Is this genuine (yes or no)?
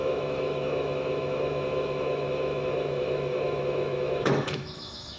no